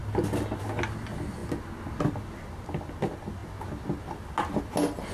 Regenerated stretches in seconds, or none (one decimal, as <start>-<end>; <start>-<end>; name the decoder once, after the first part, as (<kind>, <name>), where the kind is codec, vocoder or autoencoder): none